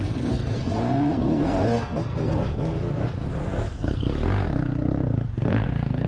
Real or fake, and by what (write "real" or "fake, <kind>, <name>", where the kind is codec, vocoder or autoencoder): fake, codec, SNAC